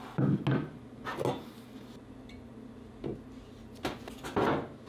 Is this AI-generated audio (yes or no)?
no